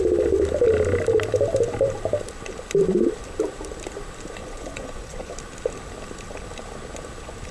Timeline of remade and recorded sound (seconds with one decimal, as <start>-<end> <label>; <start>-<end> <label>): 0.0-4.4 recorded; 4.4-5.3 remade; 5.3-7.5 recorded